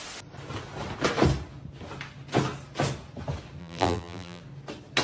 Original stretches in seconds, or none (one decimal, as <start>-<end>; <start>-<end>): 0.0-3.6; 4.4-5.0